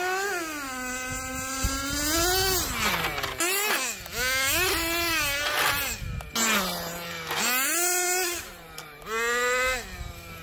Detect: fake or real real